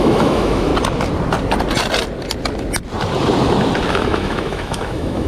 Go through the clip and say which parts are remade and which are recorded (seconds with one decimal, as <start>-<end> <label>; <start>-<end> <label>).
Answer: 0.0-0.7 remade; 0.7-3.9 recorded; 3.9-5.3 remade